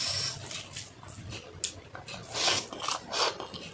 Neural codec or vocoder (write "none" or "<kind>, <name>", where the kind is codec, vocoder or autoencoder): none